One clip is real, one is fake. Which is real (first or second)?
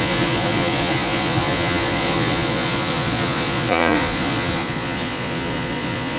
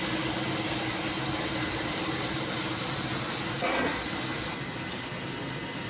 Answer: second